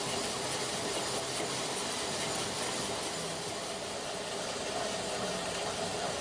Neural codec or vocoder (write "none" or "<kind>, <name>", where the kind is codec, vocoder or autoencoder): none